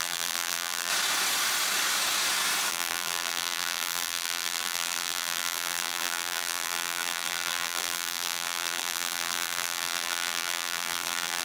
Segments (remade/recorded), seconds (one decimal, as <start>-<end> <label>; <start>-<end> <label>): 0.0-0.9 remade; 0.9-2.7 recorded; 2.7-11.4 remade